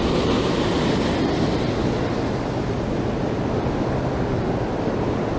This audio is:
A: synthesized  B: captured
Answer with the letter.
B